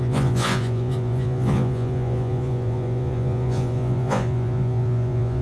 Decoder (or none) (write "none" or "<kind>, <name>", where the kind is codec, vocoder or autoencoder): vocoder, Vocos